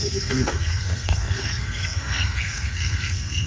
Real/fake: fake